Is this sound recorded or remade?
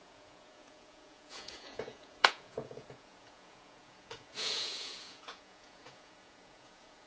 remade